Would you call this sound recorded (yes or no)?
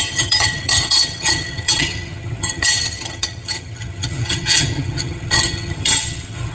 no